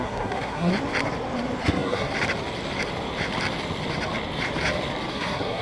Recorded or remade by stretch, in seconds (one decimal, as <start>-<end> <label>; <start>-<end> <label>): 0.0-0.7 remade; 0.7-1.6 recorded; 1.6-2.1 remade; 2.1-5.1 recorded; 5.1-5.6 remade